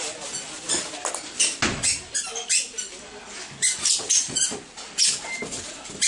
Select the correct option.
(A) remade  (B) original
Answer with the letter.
B